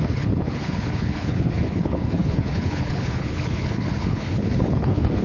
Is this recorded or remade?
remade